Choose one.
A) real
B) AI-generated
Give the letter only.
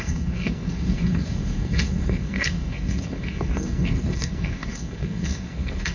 B